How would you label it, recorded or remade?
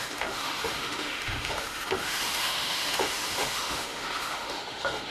remade